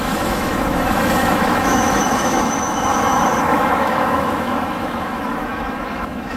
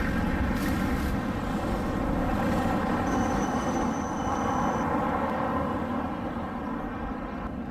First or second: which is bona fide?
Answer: second